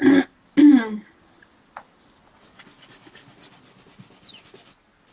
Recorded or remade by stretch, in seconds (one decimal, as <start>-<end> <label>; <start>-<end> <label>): 0.0-5.1 recorded